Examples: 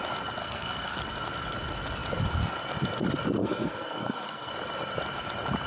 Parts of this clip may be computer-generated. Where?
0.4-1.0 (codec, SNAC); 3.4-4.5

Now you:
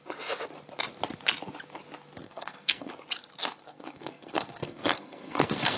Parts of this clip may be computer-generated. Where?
2.2-2.9 (codec, SNAC); 3.6-5.8

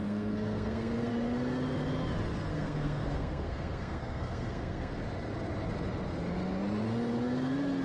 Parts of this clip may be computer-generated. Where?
0.0-1.1 (codec, SNAC); 2.5-4.9

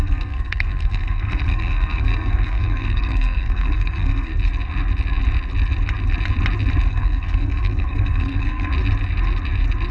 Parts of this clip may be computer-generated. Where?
0.0-4.3 (codec, SNAC); 6.9-8.7

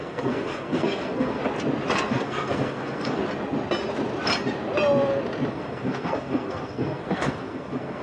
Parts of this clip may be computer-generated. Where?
0.0-1.4 (codec, SNAC); 2.1-3.2; 5.5-8.0

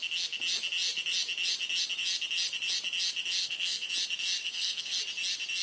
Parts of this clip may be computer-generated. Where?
3.4-3.9 (codec, SNAC); 4.4-5.0

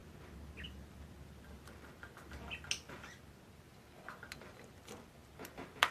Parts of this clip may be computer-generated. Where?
none